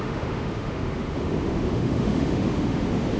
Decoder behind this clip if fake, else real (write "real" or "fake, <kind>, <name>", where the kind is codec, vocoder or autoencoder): fake, autoencoder, DAC-VAE